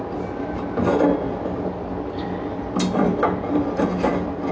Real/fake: real